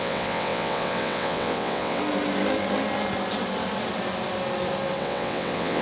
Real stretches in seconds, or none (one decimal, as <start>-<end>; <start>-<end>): 2.0-5.0